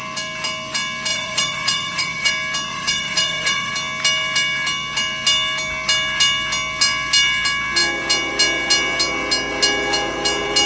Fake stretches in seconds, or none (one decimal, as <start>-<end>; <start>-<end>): 1.1-2.3; 2.7-3.7